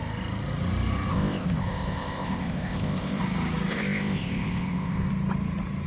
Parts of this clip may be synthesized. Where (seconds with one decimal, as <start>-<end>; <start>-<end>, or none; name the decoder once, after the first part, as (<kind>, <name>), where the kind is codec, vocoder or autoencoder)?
1.1-3.2 (codec, ZipCodec); 3.7-5.1